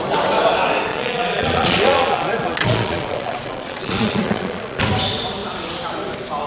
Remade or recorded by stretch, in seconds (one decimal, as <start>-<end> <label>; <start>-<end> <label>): 0.0-0.9 recorded; 0.9-4.8 remade; 4.8-6.5 recorded